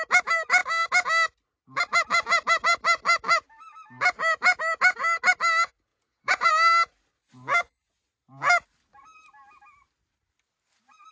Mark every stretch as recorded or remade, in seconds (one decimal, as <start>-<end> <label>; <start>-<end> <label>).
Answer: 0.0-5.9 recorded; 5.9-6.5 remade; 6.5-11.1 recorded